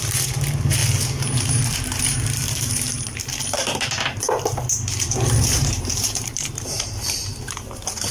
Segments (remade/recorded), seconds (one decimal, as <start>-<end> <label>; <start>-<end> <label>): 0.0-0.8 remade; 0.8-1.5 recorded; 1.5-8.1 remade